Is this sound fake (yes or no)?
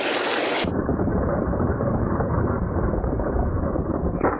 yes